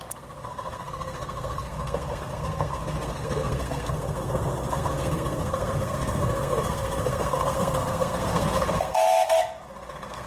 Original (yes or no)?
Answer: no